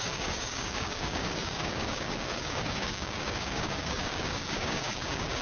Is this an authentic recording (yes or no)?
no